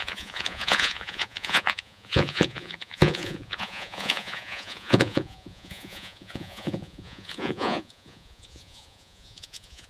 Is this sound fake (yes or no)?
yes